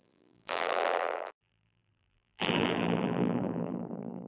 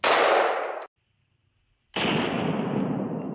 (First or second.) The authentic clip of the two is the second